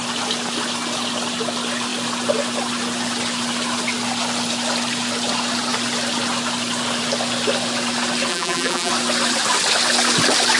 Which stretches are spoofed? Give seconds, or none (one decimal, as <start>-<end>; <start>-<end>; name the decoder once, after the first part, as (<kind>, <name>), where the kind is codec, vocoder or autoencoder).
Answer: 8.3-8.9 (vocoder, BigVGAN v2)